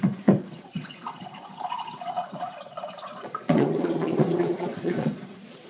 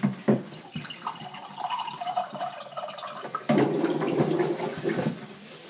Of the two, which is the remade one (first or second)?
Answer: first